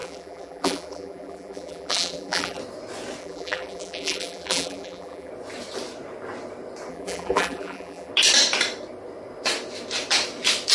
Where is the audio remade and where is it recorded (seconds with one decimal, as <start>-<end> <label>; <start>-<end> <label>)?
0.0-2.6 remade; 2.6-3.2 recorded; 3.2-5.3 remade; 5.3-6.9 recorded; 6.9-8.1 remade; 8.1-10.7 recorded